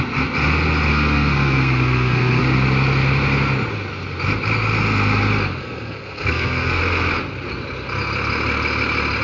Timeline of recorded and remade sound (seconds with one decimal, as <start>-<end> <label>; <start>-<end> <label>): 0.0-0.9 recorded; 0.9-2.4 remade; 2.4-5.6 recorded; 5.6-6.8 remade; 6.8-9.2 recorded